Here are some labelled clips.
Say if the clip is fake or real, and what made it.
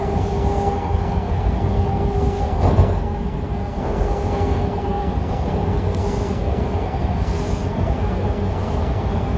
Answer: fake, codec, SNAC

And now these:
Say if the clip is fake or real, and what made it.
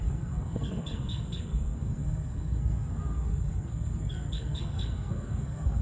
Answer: fake, codec, SNAC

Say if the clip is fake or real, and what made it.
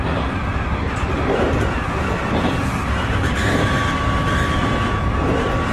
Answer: real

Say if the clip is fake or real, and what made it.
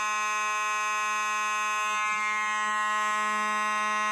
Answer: real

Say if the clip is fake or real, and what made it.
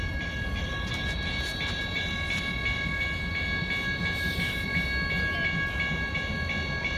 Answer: real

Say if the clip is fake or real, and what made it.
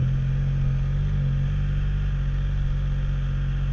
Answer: real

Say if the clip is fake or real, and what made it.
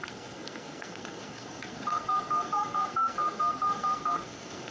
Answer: fake, codec, SNAC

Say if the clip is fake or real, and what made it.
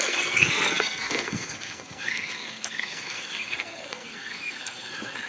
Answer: fake, codec, SNAC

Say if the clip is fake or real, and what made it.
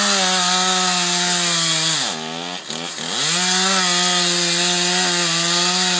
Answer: real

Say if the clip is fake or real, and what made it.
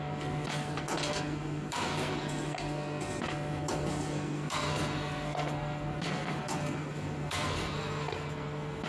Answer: fake, codec, SNAC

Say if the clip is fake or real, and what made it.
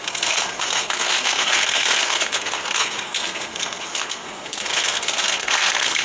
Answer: fake, codec, SNAC